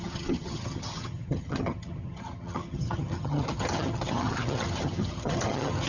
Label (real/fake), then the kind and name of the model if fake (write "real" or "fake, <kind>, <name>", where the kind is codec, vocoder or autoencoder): fake, vocoder, HiFi-GAN